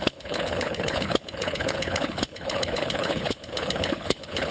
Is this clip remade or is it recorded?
remade